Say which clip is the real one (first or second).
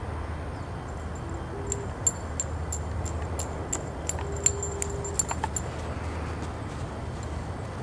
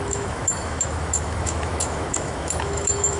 first